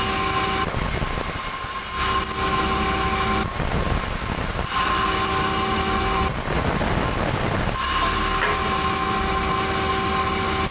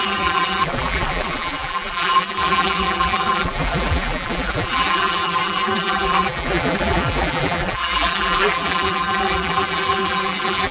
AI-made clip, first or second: second